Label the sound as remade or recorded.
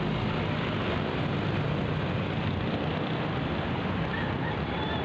recorded